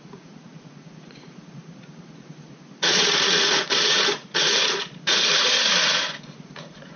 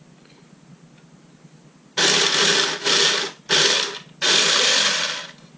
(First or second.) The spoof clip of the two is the first